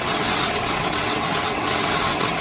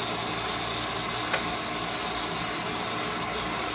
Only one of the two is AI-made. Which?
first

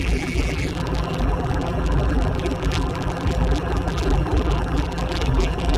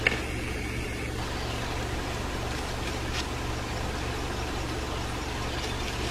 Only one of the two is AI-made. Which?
first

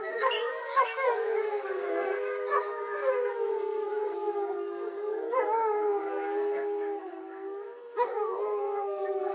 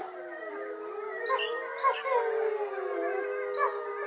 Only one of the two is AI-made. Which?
first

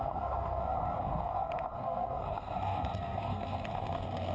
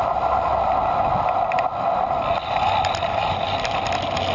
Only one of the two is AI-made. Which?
first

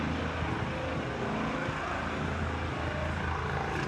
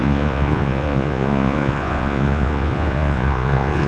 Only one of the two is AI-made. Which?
second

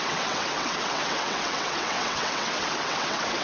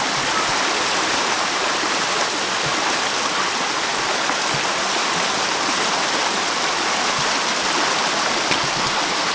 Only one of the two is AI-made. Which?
first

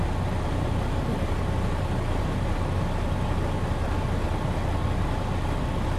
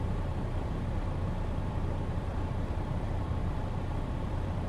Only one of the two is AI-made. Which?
second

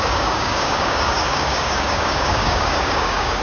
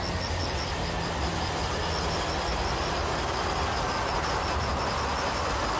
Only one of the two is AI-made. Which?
first